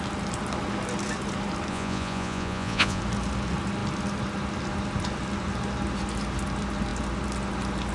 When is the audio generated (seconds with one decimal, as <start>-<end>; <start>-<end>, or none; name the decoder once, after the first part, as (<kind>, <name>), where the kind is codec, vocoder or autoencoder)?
1.7-3.0 (vocoder, Vocos)